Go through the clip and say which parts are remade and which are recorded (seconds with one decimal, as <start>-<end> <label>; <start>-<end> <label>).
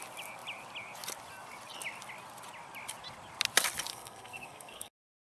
0.0-3.9 recorded; 3.9-5.2 remade